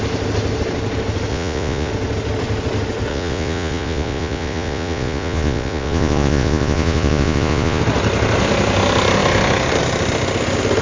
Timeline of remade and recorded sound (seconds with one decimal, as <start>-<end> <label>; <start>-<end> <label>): 0.0-1.3 recorded; 1.3-1.9 remade; 1.9-3.1 recorded; 3.1-7.8 remade; 7.8-10.8 recorded